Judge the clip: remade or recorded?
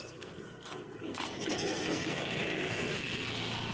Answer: remade